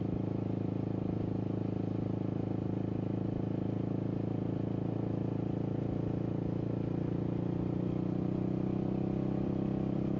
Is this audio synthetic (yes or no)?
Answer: no